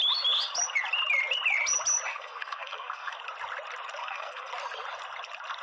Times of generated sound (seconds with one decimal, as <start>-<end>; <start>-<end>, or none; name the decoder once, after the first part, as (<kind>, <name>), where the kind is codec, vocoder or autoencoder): 2.1-3.2 (codec, SNAC); 4.0-4.5